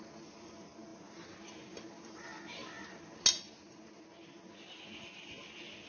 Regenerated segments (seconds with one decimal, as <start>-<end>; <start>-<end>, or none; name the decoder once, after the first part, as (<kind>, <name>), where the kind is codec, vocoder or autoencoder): none